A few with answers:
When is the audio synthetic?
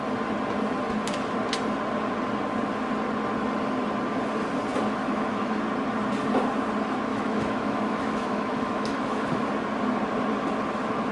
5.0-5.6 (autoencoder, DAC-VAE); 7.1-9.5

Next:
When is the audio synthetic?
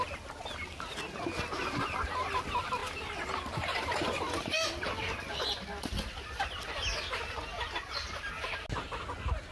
none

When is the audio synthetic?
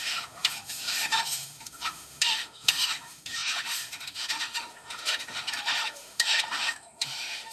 0.0-7.5 (autoencoder, DAC-VAE)